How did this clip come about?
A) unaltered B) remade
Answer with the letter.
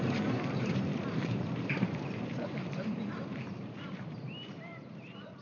B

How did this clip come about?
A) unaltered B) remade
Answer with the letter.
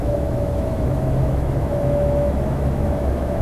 B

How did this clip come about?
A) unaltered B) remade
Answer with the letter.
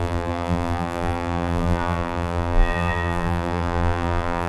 B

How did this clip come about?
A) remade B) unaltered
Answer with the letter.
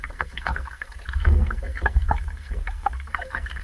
A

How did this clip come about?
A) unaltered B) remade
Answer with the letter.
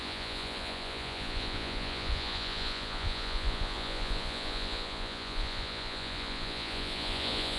B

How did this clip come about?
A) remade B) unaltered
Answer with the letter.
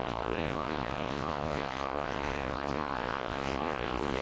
A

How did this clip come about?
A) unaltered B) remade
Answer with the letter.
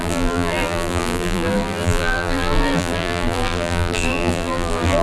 B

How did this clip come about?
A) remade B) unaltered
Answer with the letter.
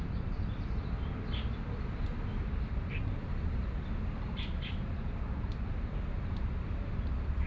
B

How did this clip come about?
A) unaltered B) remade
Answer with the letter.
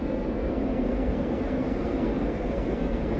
B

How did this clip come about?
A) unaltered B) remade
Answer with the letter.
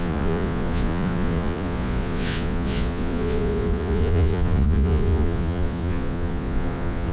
B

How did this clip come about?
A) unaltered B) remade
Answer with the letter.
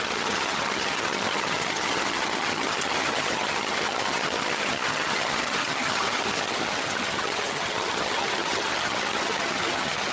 B